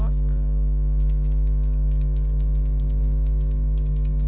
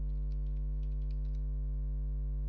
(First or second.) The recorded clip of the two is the second